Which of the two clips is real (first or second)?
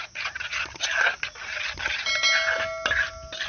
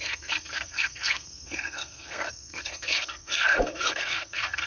first